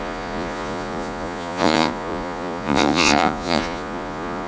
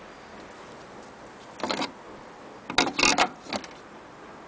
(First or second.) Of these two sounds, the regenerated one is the first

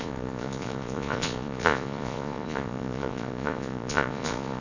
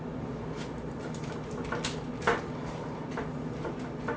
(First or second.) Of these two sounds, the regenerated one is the first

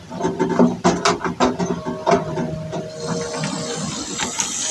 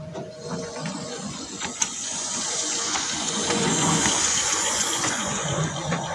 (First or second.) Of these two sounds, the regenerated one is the second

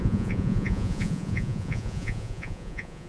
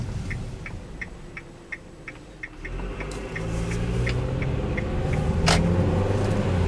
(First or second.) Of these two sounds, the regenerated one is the first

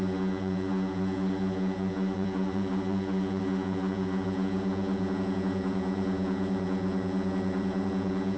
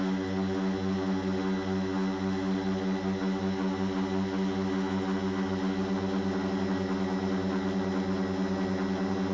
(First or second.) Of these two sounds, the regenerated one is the first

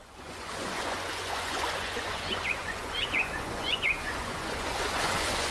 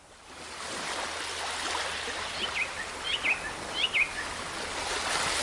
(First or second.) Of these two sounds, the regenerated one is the first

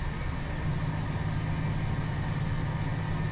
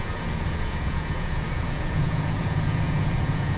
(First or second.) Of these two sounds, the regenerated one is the second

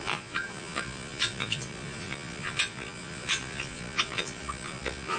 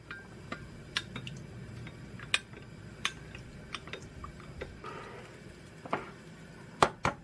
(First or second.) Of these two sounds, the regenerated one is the first